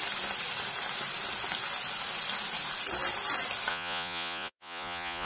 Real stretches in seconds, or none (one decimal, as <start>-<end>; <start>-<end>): 0.0-3.7